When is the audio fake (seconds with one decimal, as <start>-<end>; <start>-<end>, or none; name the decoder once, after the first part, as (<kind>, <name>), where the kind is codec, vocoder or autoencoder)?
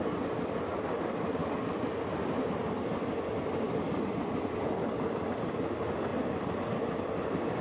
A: 6.1-7.6 (vocoder, BigVGAN v2)